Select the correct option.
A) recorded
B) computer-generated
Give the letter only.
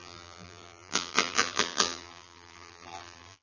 B